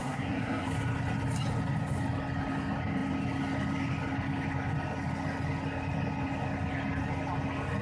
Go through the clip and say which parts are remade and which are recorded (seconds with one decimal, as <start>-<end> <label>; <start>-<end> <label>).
0.0-0.7 remade; 0.7-7.8 recorded